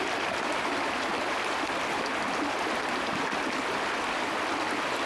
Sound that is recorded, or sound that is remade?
recorded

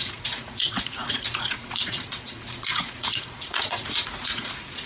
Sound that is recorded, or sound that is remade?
remade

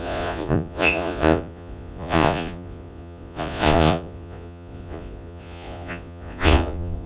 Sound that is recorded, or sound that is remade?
remade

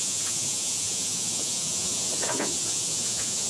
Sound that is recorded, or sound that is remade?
remade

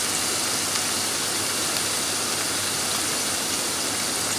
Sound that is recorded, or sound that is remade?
recorded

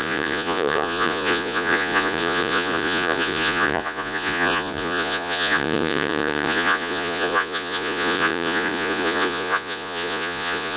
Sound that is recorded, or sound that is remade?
remade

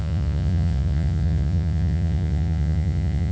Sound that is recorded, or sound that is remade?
remade